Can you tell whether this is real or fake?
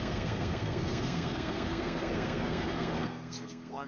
fake